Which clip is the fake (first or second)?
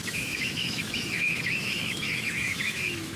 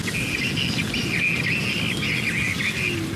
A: first